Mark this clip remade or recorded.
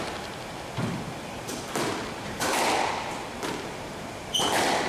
remade